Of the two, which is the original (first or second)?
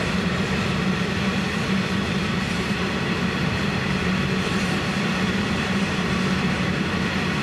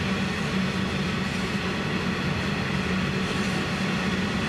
second